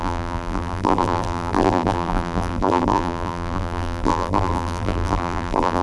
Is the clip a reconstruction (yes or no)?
yes